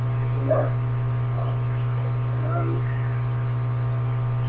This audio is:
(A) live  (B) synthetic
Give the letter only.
A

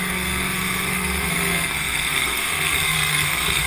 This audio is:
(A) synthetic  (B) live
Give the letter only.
A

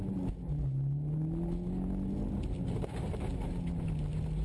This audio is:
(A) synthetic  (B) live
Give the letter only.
B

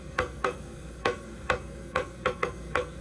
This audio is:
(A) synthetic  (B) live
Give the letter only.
A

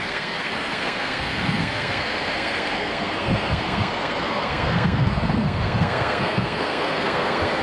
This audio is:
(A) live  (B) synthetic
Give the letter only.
B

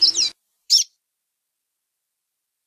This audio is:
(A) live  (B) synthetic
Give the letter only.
A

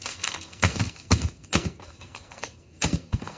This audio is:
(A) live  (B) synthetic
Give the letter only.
B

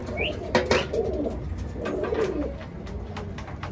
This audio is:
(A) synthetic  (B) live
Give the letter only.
B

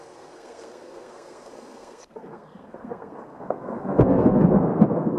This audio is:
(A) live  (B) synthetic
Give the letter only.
B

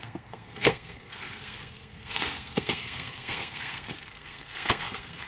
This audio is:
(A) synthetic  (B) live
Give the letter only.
A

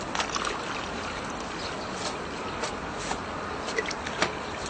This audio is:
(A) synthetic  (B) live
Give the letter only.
B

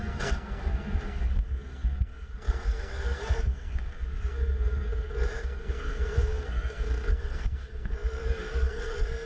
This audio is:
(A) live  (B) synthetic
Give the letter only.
B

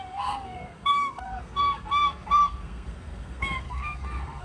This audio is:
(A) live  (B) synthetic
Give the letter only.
B